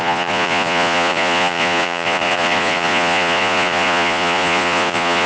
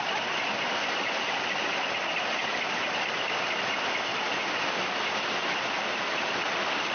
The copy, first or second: first